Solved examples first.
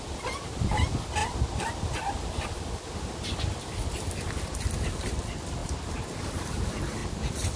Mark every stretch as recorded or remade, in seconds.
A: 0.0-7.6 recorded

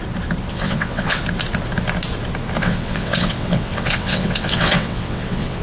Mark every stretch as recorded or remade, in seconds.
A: 0.0-0.5 recorded; 0.5-1.2 remade; 1.2-2.6 recorded; 2.6-5.6 remade

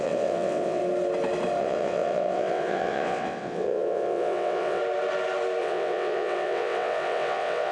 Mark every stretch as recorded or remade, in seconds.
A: 0.0-0.8 remade; 0.8-1.6 recorded; 1.6-4.8 remade; 4.8-5.6 recorded; 5.6-7.7 remade

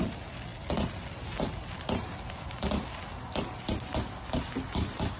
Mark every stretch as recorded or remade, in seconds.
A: 0.0-5.2 recorded

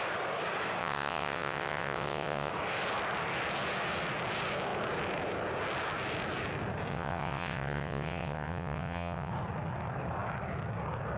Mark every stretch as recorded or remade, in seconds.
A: 0.0-0.8 recorded; 0.8-2.5 remade; 2.5-6.9 recorded; 6.9-9.3 remade; 9.3-11.2 recorded

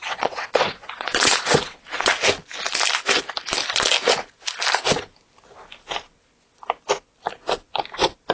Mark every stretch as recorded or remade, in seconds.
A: 0.0-2.1 remade; 2.1-8.3 recorded

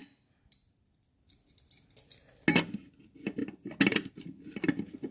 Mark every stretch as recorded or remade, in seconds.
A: 0.0-5.1 recorded